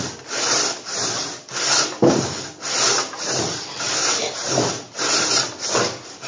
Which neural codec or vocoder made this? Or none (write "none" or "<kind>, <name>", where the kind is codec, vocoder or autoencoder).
vocoder, BigVGAN v2